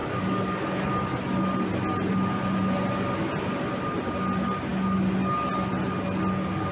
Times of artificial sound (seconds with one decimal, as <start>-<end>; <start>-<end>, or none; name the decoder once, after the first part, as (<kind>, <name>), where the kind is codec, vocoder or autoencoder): 0.0-0.9 (codec, DAC)